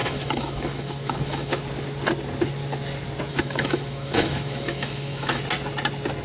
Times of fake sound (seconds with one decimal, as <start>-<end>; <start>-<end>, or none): 0.0-1.6; 3.3-5.4